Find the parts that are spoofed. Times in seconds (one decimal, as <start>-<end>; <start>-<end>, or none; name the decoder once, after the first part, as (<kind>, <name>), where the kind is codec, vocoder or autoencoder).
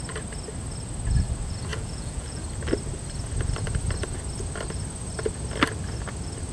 1.7-2.4 (vocoder, Vocos)